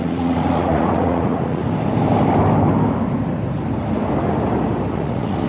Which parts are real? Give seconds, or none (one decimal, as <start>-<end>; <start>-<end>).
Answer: 1.6-4.9